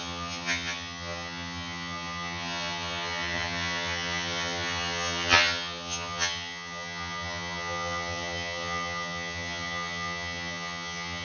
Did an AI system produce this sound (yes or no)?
yes